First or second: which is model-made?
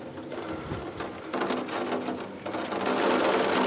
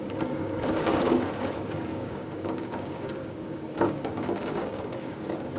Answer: second